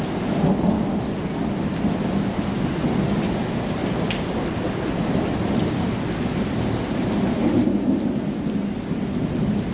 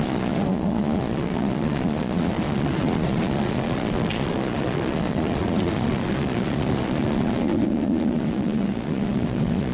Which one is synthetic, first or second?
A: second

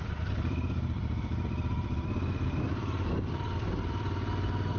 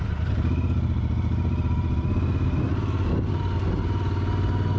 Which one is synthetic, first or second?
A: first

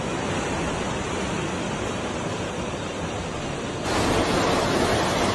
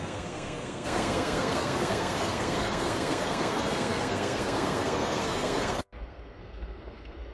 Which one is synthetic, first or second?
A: second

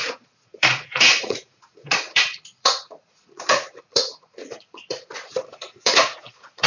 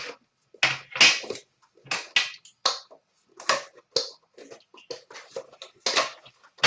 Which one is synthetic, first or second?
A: first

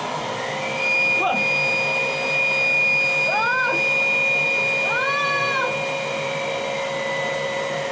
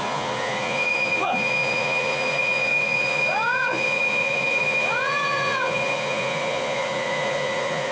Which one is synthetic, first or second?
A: second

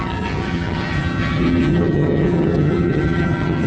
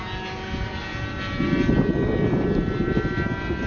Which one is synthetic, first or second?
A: first